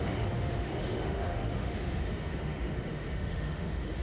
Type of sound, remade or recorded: remade